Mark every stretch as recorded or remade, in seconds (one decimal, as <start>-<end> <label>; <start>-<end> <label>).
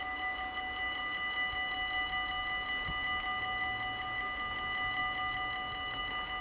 0.0-6.4 recorded